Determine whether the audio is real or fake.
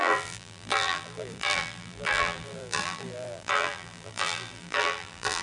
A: fake